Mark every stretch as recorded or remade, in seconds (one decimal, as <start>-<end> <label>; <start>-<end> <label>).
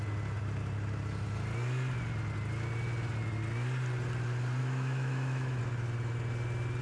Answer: 0.0-4.6 recorded; 4.6-5.6 remade; 5.6-6.8 recorded